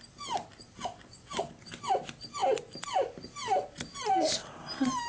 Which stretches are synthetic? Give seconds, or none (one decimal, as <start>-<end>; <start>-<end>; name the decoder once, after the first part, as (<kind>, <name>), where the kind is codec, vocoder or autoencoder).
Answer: 0.9-1.5 (vocoder, Vocos)

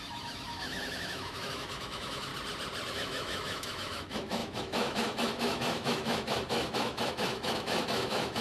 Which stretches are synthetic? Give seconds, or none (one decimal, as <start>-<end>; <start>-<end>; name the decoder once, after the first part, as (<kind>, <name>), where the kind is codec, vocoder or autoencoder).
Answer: 0.0-2.3 (autoencoder, DAC-VAE); 2.9-8.4

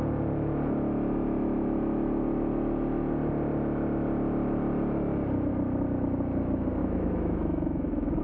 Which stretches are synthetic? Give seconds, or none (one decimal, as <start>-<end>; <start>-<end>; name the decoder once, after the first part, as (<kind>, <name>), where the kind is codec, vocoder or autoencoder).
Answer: 6.8-8.2 (autoencoder, DAC-VAE)